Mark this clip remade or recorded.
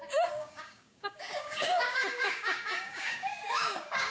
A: remade